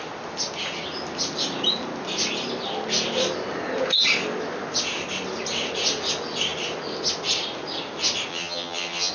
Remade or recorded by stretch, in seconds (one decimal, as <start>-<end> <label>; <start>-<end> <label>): 0.0-8.3 recorded; 8.3-9.1 remade